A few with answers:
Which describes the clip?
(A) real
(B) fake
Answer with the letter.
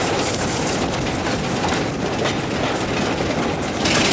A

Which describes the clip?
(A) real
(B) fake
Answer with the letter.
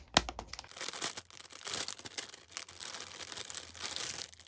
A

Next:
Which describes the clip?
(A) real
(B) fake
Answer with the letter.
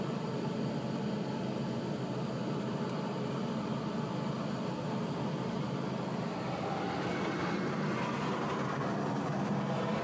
A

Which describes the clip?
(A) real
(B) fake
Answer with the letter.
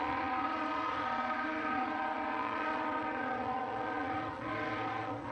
B